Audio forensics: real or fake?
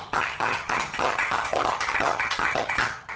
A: fake